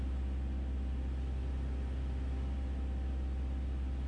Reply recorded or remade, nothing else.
recorded